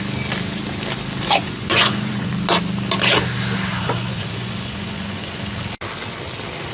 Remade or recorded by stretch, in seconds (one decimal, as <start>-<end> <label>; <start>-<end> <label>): 0.0-1.4 recorded; 1.4-2.3 remade; 2.3-3.7 recorded; 3.7-5.4 remade; 5.4-6.7 recorded